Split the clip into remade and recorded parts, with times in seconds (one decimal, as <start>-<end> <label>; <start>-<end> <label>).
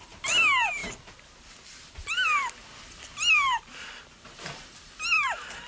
0.0-5.7 recorded